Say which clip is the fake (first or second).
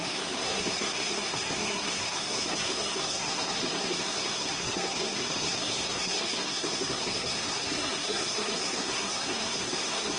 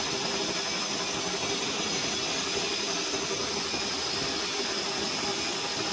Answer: first